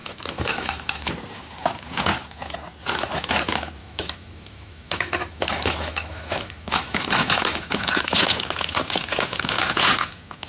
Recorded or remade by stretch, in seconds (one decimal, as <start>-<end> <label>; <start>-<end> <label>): 0.0-1.1 remade; 1.1-3.8 recorded; 3.8-7.7 remade; 7.7-10.5 recorded